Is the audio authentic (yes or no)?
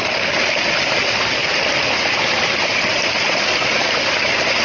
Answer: yes